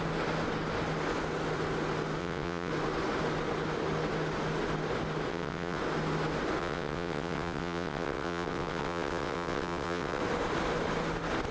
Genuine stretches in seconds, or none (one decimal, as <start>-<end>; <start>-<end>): 0.0-2.2; 2.7-5.3; 5.8-6.6; 10.2-11.5